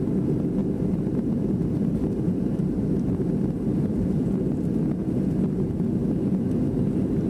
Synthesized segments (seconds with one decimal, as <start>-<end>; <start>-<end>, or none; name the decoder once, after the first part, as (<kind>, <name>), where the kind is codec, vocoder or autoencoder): 0.6-1.5 (vocoder, BigVGAN v2); 1.9-2.9; 3.7-4.3